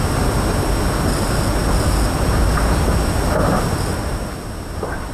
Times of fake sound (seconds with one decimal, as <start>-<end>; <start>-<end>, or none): none